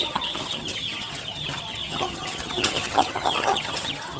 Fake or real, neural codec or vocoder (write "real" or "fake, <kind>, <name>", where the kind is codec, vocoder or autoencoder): fake, vocoder, HiFi-GAN